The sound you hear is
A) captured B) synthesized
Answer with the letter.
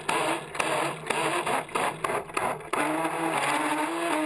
A